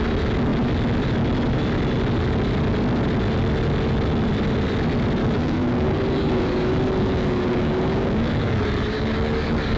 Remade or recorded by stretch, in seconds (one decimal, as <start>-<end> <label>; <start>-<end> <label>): 0.0-5.2 recorded; 5.2-9.8 remade